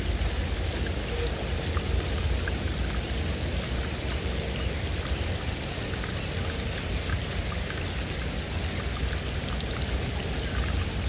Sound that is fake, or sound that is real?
real